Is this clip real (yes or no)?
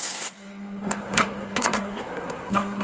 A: no